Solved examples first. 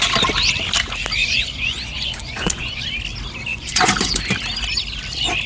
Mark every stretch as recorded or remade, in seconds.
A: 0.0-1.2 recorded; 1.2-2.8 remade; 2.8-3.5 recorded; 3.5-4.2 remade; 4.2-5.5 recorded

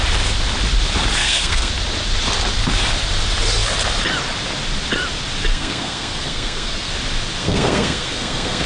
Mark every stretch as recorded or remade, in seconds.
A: 0.0-1.2 recorded; 1.2-1.7 remade; 1.7-5.5 recorded; 5.5-6.9 remade; 6.9-7.4 recorded; 7.4-8.7 remade

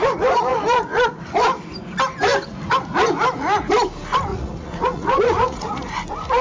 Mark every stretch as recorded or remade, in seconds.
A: 0.0-4.3 recorded; 4.3-5.9 remade; 5.9-6.4 recorded

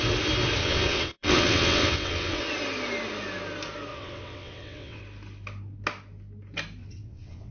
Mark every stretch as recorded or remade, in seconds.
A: 0.0-0.6 recorded; 0.6-2.5 remade; 2.5-3.9 recorded; 3.9-5.0 remade; 5.0-6.8 recorded; 6.8-7.5 remade